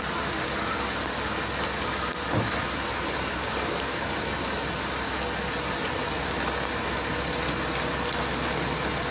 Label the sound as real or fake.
real